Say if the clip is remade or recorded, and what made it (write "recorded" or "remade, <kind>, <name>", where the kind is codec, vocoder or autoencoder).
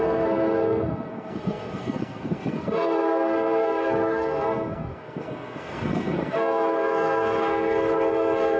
remade, codec, SNAC